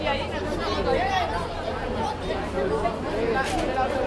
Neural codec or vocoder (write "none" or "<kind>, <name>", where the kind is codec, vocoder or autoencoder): none